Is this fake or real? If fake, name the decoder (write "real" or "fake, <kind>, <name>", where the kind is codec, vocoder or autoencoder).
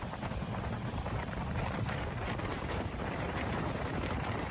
fake, vocoder, BigVGAN v2